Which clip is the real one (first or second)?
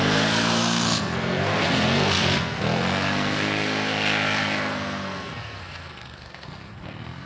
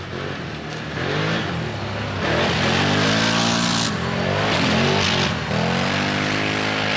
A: second